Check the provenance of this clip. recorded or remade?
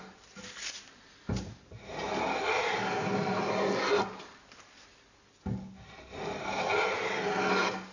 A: recorded